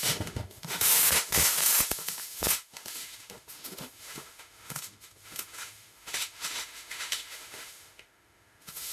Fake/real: fake